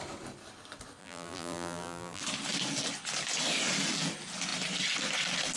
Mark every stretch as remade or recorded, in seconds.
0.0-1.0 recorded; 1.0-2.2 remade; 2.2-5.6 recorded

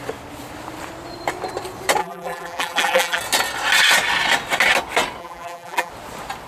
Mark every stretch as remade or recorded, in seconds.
0.0-2.0 recorded; 2.0-3.2 remade; 3.2-5.2 recorded; 5.2-5.9 remade; 5.9-6.5 recorded

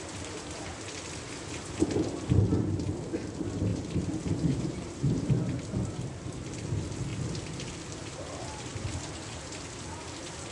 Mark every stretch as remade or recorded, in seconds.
0.0-3.7 recorded; 3.7-5.3 remade; 5.3-10.5 recorded

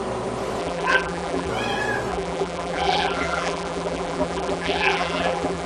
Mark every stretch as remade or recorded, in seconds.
0.0-0.6 recorded; 0.6-1.5 remade; 1.5-2.1 recorded; 2.1-5.7 remade

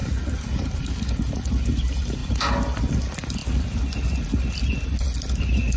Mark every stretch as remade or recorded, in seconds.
0.0-1.2 remade; 1.2-5.8 recorded

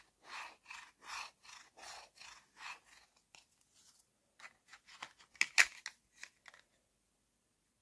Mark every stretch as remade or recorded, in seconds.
0.0-7.8 recorded

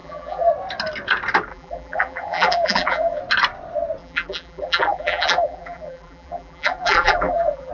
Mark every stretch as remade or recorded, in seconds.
0.0-0.5 remade; 0.5-1.5 recorded; 1.5-3.2 remade; 3.2-4.0 recorded; 4.0-7.7 remade

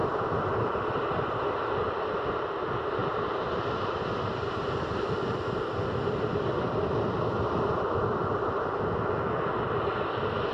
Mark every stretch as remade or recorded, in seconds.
0.0-3.0 recorded; 3.0-5.0 remade; 5.0-6.3 recorded; 6.3-7.1 remade; 7.1-10.5 recorded